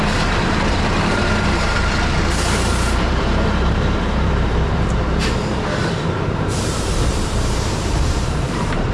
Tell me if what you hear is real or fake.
fake